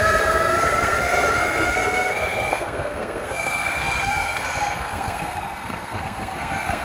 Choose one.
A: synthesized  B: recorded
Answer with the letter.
A